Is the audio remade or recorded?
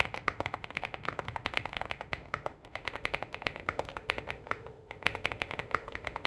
remade